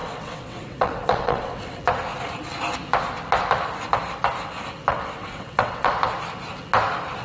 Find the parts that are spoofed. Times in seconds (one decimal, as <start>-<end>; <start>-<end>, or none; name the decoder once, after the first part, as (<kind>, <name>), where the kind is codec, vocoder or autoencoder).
0.0-1.8 (vocoder, WaveNeXt); 4.9-5.9